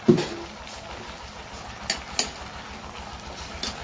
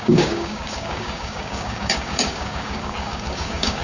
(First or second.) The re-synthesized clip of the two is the second